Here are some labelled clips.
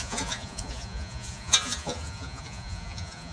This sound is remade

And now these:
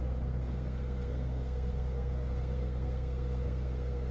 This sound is remade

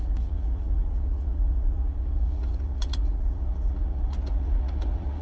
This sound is remade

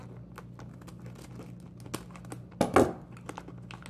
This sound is recorded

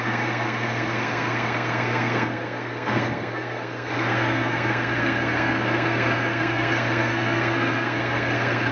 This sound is remade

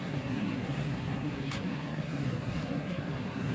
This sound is remade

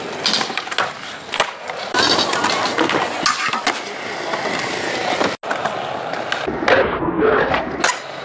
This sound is recorded